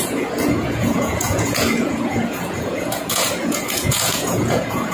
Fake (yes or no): yes